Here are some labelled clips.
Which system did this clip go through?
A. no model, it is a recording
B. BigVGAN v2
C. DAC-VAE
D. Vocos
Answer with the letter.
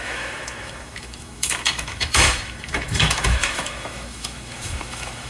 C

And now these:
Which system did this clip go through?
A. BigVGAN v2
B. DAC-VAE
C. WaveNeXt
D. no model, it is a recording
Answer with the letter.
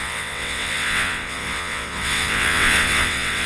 C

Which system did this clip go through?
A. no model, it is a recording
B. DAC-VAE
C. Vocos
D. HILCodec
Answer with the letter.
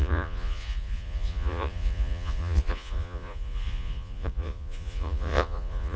C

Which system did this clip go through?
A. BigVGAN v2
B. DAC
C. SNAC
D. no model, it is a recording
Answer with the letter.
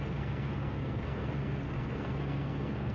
C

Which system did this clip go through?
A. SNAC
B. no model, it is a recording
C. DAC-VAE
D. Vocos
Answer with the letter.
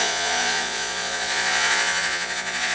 D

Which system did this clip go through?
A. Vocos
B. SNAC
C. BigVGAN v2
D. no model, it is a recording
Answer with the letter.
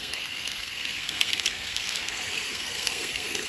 B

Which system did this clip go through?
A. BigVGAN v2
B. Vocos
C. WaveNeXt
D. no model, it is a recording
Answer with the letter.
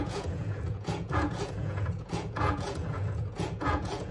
B